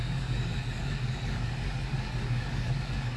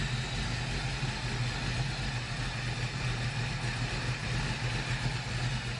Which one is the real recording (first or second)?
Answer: second